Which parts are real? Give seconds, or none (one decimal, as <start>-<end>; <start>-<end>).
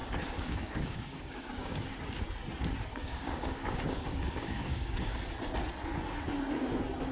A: 1.9-2.9; 5.1-7.1